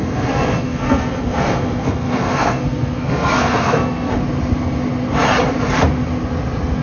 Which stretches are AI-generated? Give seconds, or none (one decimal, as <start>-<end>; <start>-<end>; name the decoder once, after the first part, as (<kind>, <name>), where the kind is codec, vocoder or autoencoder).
0.0-4.1 (codec, SNAC)